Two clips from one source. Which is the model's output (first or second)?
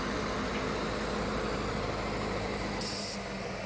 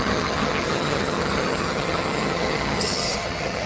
second